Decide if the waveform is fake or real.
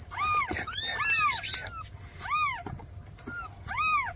real